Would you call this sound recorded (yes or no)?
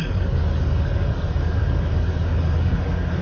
no